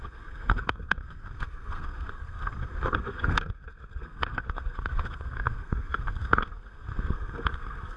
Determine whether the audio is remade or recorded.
remade